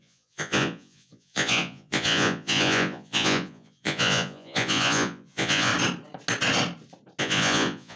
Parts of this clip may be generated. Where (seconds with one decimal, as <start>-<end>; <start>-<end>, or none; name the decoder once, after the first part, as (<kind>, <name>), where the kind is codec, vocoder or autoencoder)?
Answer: 0.0-5.7 (vocoder, Vocos); 7.2-8.0